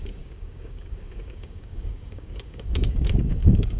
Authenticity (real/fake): fake